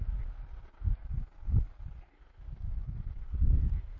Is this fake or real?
real